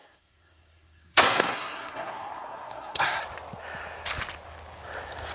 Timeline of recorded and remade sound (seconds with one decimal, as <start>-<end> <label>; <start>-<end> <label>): 0.0-3.2 remade; 3.2-5.3 recorded